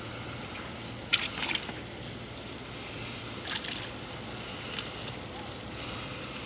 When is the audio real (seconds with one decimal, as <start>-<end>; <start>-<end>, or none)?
0.0-6.5